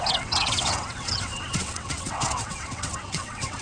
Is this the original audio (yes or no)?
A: no